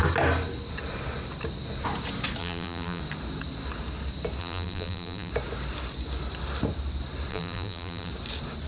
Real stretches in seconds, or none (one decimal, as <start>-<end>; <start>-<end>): 0.0-2.4; 3.0-4.4; 5.3-7.3; 8.1-8.7